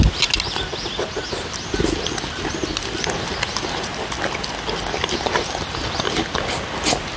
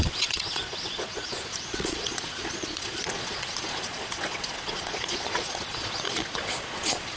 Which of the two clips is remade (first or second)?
second